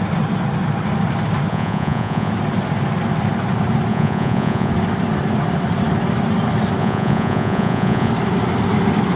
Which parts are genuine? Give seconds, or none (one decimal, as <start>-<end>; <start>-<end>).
0.0-1.5; 2.3-3.9; 4.7-6.8; 8.1-9.2

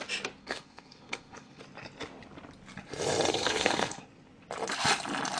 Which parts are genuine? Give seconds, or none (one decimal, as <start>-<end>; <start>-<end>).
0.0-0.4; 1.6-3.3; 4.0-5.4

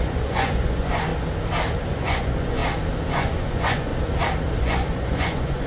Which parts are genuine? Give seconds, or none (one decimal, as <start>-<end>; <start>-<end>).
1.1-1.9; 2.6-3.1; 3.9-4.6

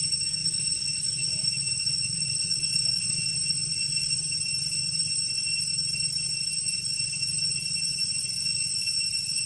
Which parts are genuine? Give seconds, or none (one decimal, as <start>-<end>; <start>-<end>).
0.0-0.4; 3.1-9.5

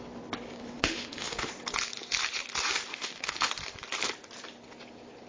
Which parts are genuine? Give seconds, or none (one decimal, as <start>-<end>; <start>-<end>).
0.0-0.6; 1.5-2.9; 3.5-5.3